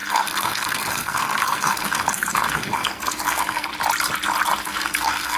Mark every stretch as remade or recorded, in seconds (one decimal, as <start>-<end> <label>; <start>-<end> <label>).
0.0-3.7 remade; 3.7-4.6 recorded; 4.6-5.4 remade